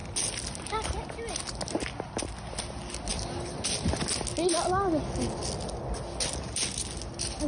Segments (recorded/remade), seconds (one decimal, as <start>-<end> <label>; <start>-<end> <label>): 0.0-7.5 recorded